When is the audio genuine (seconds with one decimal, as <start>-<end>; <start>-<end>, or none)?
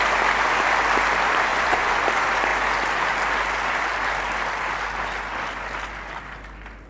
0.0-1.5; 2.0-6.9